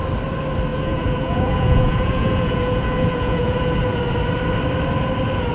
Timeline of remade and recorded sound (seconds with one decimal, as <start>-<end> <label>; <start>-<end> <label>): 0.0-0.7 recorded; 0.7-4.0 remade; 4.0-5.5 recorded